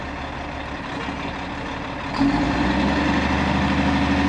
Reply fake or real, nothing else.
real